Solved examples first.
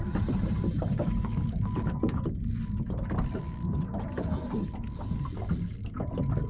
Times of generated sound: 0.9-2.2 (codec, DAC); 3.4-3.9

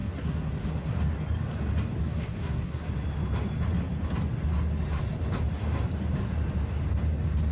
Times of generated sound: 0.0-1.0 (codec, SNAC); 2.0-2.9

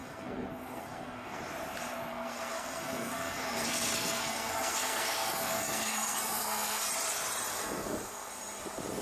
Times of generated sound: 0.0-1.4 (codec, SNAC); 2.1-6.9; 7.5-8.3

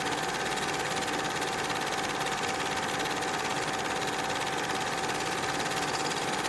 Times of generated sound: none

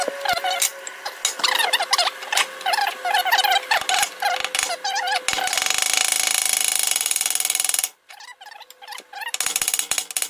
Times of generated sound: none